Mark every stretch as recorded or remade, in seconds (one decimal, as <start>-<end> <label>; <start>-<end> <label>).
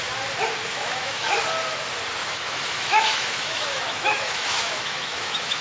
0.0-0.7 recorded; 0.7-1.4 remade; 1.4-2.2 recorded; 2.2-5.6 remade